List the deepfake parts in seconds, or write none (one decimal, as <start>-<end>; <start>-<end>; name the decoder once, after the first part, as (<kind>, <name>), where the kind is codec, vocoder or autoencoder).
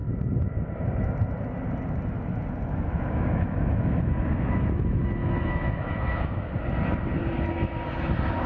2.7-6.5 (autoencoder, DAC-VAE)